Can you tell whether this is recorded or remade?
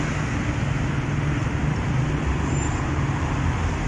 recorded